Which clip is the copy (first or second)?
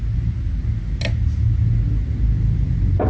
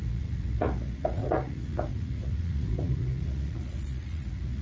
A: second